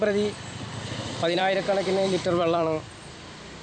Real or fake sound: fake